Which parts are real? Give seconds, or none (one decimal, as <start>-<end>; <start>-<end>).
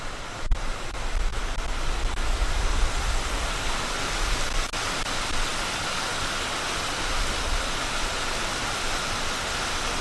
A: 0.0-10.0